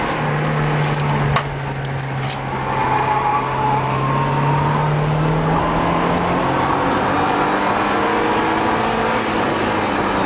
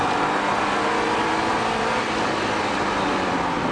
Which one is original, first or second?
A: first